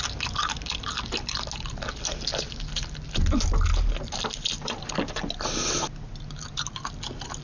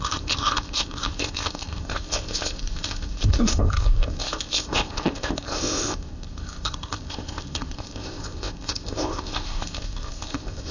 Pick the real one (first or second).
first